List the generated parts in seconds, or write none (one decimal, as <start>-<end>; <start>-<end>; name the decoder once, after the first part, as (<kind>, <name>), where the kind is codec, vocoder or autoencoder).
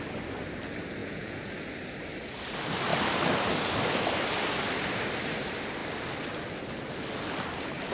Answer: 1.0-1.5 (vocoder, Vocos)